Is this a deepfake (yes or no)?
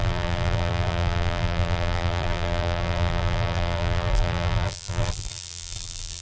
yes